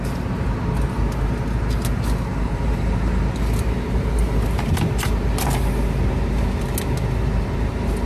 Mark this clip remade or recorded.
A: recorded